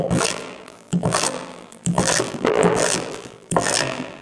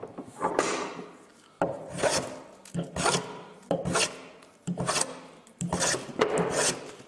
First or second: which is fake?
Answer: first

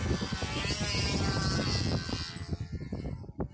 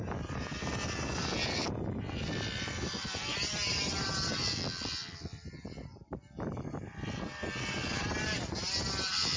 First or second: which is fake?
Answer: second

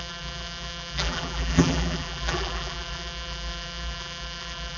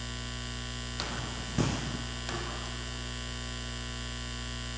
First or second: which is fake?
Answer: first